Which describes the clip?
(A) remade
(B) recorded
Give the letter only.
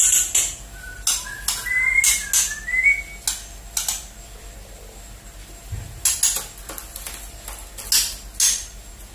B